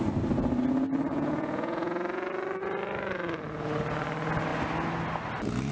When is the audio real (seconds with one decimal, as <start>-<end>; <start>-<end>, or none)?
0.0-1.1; 2.3-5.7

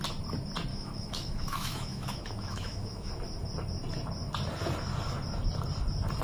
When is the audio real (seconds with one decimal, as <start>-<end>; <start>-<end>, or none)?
0.0-0.7; 3.1-6.2